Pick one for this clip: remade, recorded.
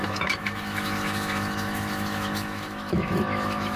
remade